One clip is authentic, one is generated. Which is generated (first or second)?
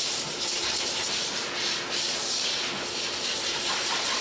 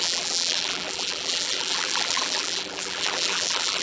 second